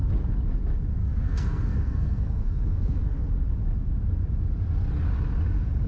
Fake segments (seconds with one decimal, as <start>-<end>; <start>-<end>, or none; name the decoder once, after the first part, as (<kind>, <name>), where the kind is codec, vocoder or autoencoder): 1.0-3.3 (codec, SNAC)